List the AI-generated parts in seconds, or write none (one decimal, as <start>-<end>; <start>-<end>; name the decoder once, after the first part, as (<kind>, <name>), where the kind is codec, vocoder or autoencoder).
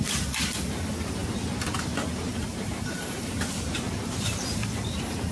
2.3-3.3 (vocoder, BigVGAN v2)